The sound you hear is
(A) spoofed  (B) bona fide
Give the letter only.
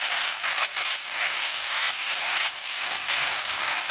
A